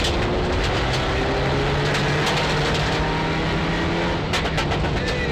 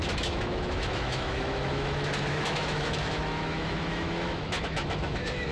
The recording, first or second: first